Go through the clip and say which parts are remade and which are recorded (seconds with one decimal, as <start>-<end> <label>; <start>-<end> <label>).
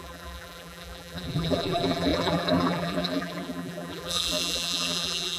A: 0.0-5.4 remade